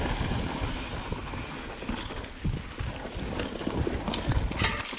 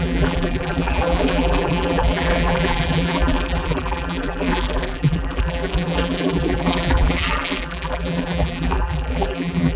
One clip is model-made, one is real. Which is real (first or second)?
first